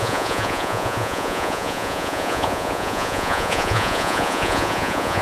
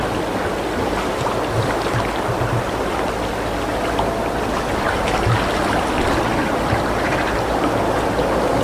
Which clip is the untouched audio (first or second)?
second